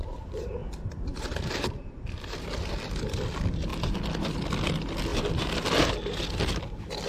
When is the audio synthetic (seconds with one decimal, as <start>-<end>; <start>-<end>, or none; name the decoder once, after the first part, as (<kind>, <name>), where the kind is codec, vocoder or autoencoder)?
none

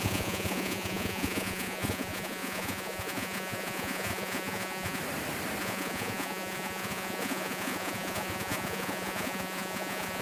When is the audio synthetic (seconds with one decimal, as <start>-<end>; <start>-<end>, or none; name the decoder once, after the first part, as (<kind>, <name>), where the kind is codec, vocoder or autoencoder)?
0.0-5.0 (vocoder, Vocos); 5.6-10.2